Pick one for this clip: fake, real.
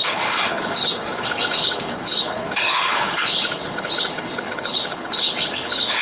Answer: fake